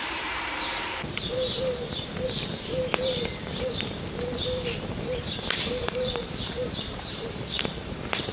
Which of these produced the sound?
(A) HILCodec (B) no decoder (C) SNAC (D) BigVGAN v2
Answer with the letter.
D